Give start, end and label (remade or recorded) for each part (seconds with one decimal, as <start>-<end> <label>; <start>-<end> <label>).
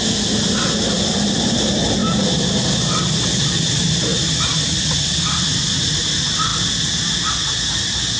0.0-8.2 recorded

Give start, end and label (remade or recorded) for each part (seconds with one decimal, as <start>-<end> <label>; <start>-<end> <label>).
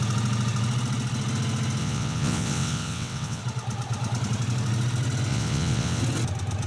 0.0-1.8 recorded; 1.8-3.4 remade; 3.4-5.3 recorded; 5.3-6.0 remade; 6.0-6.7 recorded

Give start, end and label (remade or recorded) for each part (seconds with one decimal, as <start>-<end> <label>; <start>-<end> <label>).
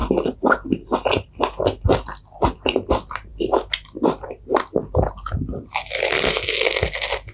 0.0-7.3 recorded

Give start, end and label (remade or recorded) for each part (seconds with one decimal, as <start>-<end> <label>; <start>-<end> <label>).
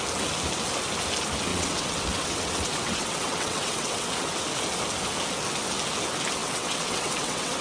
0.0-1.5 recorded; 1.5-4.1 remade; 4.1-6.4 recorded; 6.4-7.6 remade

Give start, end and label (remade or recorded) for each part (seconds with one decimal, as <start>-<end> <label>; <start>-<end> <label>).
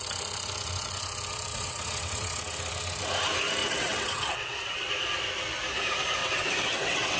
0.0-1.5 recorded; 1.5-2.4 remade; 2.4-3.6 recorded; 3.6-4.9 remade; 4.9-6.2 recorded; 6.2-7.2 remade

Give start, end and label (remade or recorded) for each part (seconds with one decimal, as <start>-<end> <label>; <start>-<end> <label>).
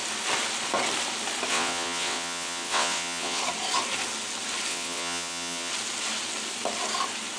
0.0-1.5 recorded; 1.5-3.4 remade; 3.4-4.7 recorded; 4.7-5.7 remade; 5.7-7.4 recorded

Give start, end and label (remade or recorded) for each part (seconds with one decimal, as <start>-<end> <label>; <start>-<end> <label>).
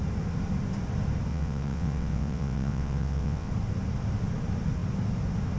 0.0-1.3 recorded; 1.3-3.5 remade; 3.5-5.6 recorded